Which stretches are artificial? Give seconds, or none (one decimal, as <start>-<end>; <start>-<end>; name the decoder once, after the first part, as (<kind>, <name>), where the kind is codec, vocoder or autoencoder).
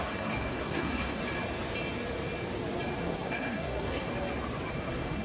0.0-1.2 (codec, SNAC); 3.0-4.1; 4.7-5.2